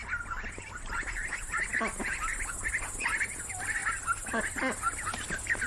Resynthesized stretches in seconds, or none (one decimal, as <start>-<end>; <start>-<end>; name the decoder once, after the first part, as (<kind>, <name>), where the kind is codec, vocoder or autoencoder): none